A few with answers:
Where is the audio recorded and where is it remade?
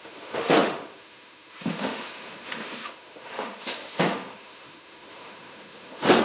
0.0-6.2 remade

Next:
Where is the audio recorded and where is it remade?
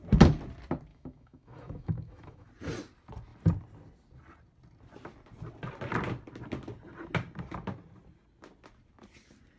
0.0-0.9 recorded; 0.9-2.5 remade; 2.5-9.6 recorded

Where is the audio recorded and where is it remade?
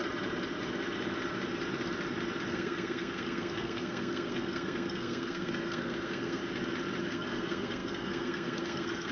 0.0-2.5 recorded; 2.5-6.4 remade; 6.4-7.0 recorded; 7.0-9.1 remade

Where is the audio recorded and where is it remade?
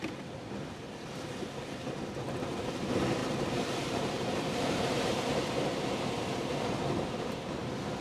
0.0-3.2 recorded; 3.2-7.5 remade; 7.5-8.0 recorded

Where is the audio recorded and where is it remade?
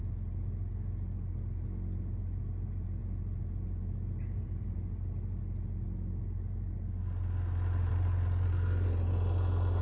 0.0-9.8 recorded